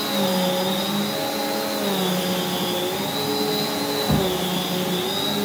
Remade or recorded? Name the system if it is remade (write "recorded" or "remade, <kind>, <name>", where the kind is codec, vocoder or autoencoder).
recorded